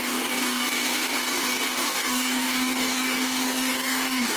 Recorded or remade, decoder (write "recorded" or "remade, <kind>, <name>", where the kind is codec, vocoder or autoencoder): remade, codec, DAC